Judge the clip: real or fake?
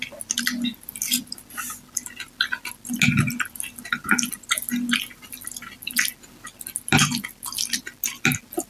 real